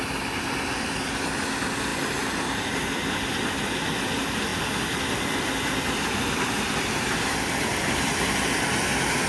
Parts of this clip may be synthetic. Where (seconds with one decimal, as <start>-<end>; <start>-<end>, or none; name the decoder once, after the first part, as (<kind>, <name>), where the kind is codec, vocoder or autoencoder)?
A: none